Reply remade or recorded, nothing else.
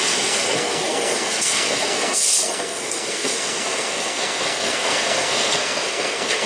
remade